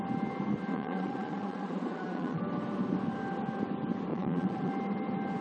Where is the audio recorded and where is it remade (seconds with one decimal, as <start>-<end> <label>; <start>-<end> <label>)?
0.0-0.7 recorded; 0.7-2.4 remade; 2.4-4.1 recorded; 4.1-4.7 remade; 4.7-5.4 recorded